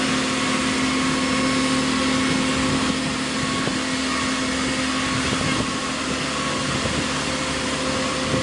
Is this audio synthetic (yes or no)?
no